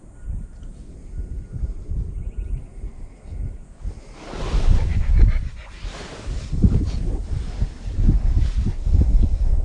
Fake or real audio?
real